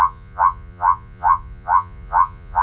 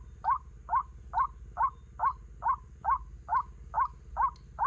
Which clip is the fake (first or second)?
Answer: first